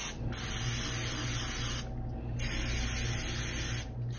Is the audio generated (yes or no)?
no